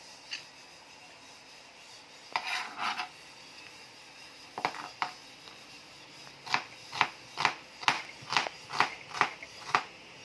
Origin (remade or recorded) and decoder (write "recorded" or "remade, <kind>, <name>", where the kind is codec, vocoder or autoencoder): recorded